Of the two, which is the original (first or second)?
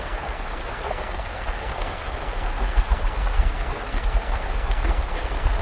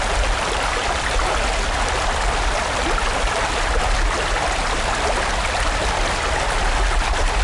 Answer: second